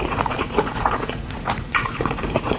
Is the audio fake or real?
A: fake